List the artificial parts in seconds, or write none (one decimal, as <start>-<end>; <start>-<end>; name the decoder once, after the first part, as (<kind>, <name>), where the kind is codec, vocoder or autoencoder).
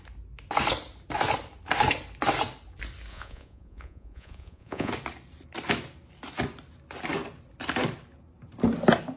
3.1-4.9 (vocoder, Vocos)